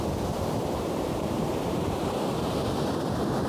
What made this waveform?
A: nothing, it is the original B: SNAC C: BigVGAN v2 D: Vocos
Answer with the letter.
C